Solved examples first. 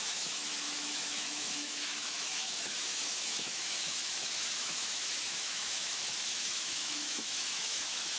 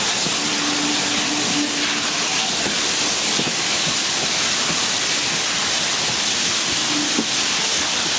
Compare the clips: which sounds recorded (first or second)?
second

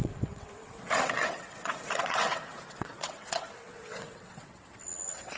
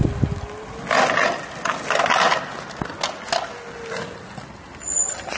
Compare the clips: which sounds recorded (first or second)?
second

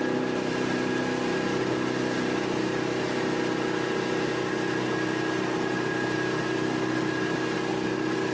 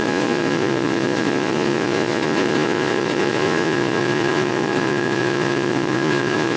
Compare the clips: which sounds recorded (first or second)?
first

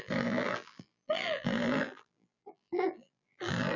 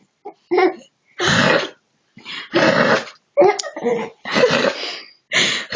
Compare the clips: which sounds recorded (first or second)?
second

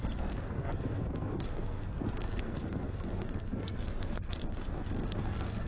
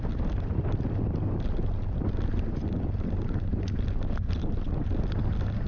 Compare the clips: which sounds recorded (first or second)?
second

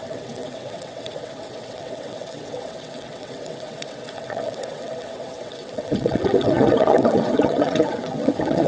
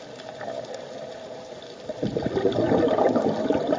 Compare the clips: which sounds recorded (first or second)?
second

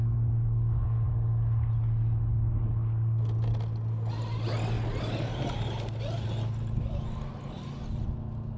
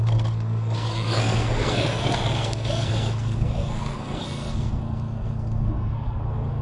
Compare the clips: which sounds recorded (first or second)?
first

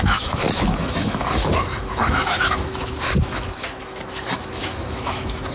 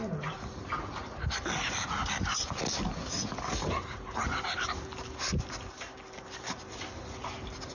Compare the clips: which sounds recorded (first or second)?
second